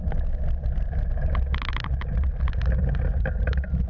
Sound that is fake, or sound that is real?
real